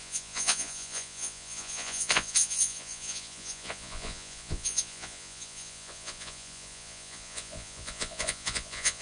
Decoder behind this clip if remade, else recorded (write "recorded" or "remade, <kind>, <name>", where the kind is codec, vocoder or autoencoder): remade, vocoder, Vocos